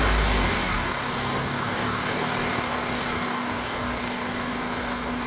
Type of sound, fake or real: fake